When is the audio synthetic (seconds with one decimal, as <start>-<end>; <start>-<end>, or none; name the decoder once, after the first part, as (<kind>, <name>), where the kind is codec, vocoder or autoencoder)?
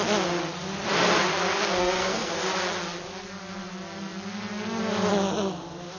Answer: 1.8-2.3 (codec, SNAC)